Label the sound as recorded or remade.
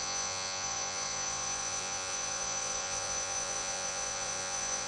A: remade